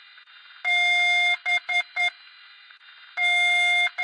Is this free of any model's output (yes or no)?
yes